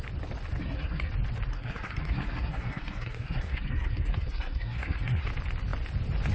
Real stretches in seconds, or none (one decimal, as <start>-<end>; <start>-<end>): 0.0-0.6; 1.1-1.5; 5.3-6.3